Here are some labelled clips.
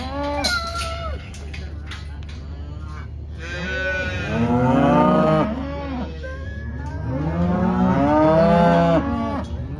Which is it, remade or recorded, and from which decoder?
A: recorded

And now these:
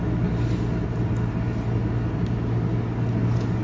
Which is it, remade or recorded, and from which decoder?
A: recorded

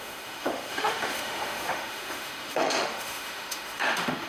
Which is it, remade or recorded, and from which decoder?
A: remade, autoencoder, DAC-VAE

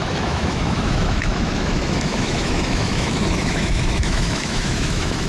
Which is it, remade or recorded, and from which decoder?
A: remade, autoencoder, DAC-VAE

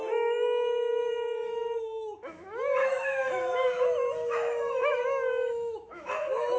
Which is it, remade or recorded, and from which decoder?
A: remade, autoencoder, DAC-VAE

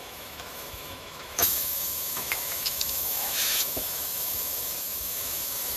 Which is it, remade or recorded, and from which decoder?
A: remade, autoencoder, DAC-VAE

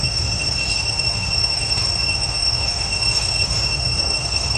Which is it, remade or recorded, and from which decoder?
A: remade, autoencoder, DAC-VAE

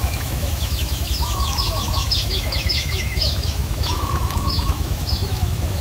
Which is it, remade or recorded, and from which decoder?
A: remade, autoencoder, DAC-VAE